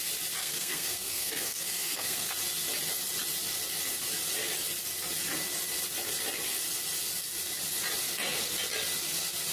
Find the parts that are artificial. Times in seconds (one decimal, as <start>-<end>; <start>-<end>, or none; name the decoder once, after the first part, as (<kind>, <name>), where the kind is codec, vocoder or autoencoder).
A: 0.4-2.3 (codec, SNAC)